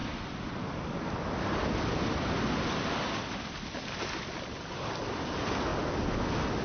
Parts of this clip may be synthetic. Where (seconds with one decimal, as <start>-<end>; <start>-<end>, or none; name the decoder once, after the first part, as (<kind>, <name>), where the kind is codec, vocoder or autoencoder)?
none